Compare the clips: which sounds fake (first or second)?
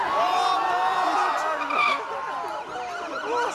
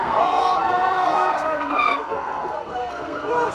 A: second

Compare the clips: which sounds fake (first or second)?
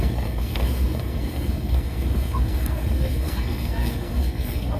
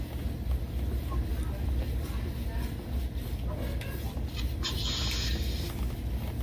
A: first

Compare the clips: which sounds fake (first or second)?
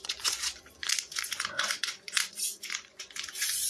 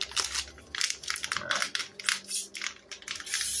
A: first